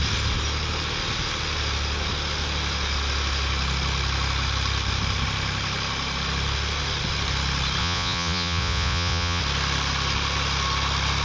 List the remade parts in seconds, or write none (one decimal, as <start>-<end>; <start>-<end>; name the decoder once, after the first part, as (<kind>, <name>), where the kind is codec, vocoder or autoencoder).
7.8-9.4 (vocoder, Vocos)